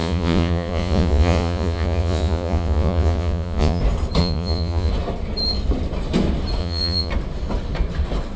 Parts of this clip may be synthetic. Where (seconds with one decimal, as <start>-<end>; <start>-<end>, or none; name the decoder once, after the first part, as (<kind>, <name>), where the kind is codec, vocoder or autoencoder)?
0.0-3.8 (vocoder, Vocos); 4.2-4.9; 6.6-7.1